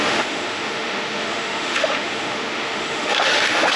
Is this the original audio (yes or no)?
no